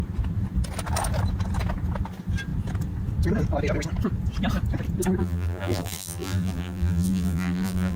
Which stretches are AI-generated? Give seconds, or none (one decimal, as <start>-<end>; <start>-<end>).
5.2-8.0